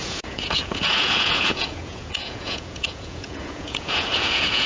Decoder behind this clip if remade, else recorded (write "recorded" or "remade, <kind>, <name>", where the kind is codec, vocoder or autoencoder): remade, vocoder, Vocos